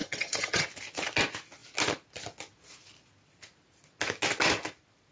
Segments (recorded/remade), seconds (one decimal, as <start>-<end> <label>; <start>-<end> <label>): 0.0-0.7 remade; 0.7-5.1 recorded